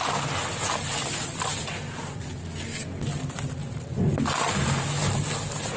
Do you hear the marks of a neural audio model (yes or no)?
no